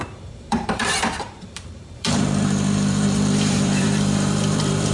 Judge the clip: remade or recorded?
remade